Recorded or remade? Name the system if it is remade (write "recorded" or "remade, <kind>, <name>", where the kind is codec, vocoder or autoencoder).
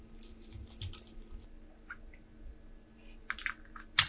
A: recorded